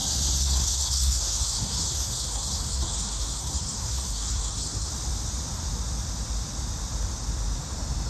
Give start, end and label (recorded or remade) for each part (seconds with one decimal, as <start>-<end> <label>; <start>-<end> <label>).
0.0-4.9 remade; 4.9-8.1 recorded